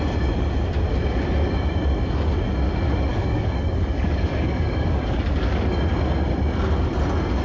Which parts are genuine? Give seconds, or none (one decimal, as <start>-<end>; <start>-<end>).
0.0-3.1; 5.9-7.4